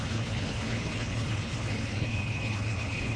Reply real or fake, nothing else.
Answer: fake